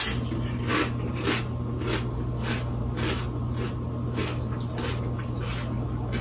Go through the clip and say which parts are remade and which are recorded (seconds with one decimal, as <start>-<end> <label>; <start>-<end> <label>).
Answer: 0.0-6.2 recorded